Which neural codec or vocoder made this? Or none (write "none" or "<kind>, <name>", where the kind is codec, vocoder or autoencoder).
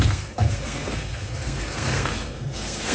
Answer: codec, SNAC